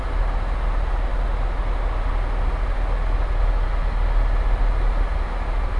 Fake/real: real